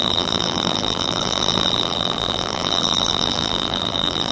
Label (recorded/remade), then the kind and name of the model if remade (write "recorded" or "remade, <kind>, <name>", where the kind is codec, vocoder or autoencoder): remade, vocoder, BigVGAN v2